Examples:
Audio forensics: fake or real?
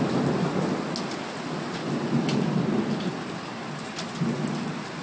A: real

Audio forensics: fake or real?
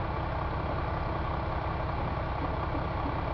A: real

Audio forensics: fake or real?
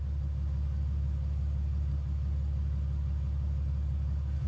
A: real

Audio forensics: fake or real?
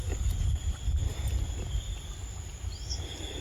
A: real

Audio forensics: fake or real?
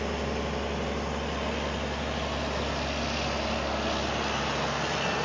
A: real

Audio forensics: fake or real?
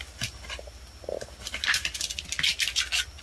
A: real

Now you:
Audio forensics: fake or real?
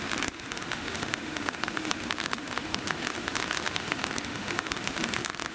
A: fake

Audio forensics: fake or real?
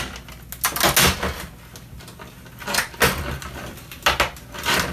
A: real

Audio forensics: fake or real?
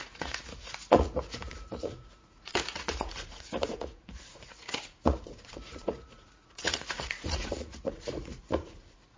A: fake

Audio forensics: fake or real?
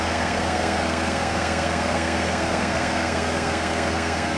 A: fake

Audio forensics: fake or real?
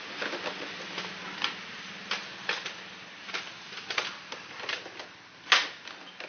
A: real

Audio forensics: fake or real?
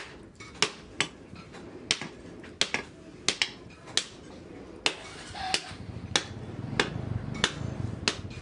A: real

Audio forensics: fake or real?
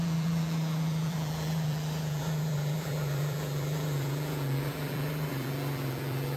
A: fake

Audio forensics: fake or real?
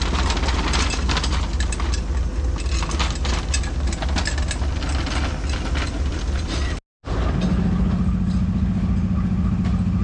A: real